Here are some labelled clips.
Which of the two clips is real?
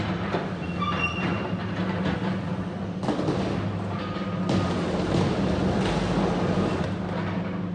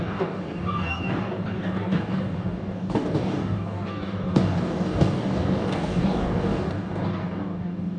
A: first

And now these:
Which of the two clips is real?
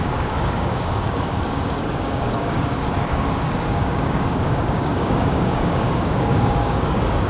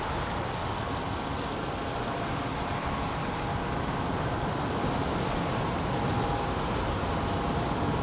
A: second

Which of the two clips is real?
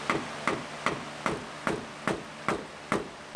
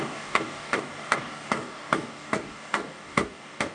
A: first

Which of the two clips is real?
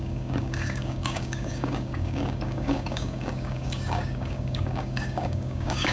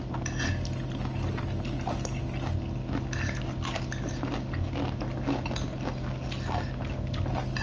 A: second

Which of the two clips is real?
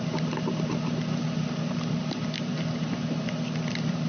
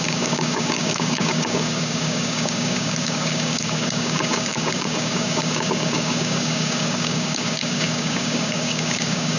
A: first